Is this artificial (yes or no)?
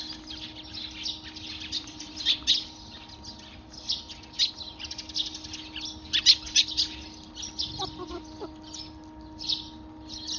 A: no